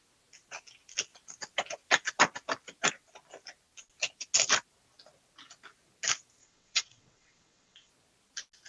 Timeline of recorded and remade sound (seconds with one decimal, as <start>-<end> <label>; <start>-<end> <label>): 0.0-6.4 recorded; 6.4-7.9 remade; 7.9-8.7 recorded